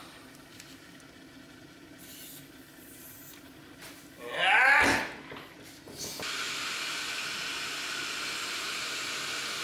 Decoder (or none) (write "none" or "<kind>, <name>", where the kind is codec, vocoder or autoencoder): none